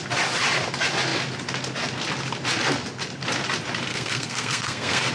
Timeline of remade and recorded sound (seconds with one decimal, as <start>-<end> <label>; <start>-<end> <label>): 0.0-3.9 recorded; 3.9-5.1 remade